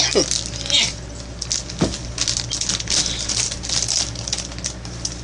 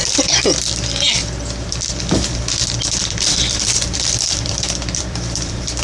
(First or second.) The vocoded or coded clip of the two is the second